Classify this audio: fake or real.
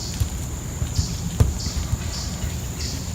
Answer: real